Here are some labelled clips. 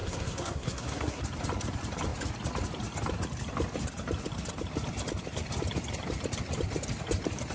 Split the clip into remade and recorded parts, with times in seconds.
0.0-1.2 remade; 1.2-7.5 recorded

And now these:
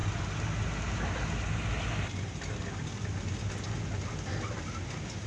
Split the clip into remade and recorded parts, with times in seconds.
0.0-5.3 recorded